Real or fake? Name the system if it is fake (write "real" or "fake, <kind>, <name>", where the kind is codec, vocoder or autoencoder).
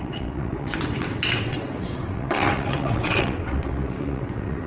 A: fake, vocoder, WaveNeXt